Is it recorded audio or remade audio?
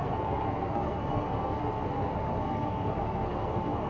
remade